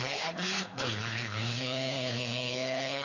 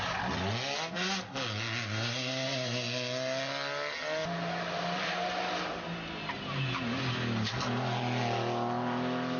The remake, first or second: first